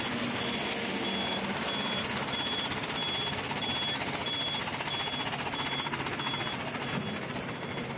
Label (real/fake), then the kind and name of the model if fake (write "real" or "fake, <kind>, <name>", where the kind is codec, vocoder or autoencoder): real